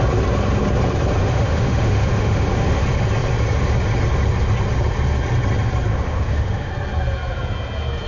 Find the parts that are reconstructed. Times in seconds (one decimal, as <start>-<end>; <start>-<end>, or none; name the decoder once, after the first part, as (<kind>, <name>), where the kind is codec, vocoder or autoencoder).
1.2-2.8 (autoencoder, DAC-VAE); 5.9-6.7